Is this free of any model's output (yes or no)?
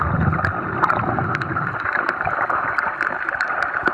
yes